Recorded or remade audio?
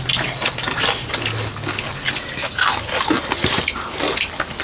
recorded